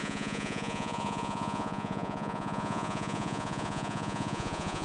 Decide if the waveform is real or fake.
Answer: fake